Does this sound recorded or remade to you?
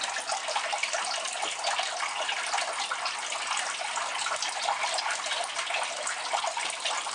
remade